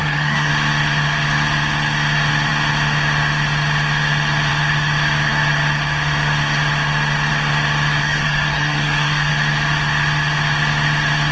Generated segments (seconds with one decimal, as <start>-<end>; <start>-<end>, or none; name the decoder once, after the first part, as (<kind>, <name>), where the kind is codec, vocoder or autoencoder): 0.0-0.5 (codec, SNAC); 8.0-9.3